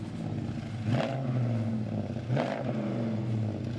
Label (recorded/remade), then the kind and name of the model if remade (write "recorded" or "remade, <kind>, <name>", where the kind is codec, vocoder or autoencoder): recorded